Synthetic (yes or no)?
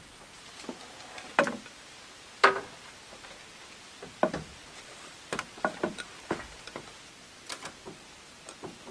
no